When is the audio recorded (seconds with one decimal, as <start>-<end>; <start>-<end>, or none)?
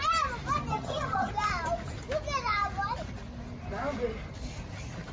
0.0-0.7; 1.3-5.1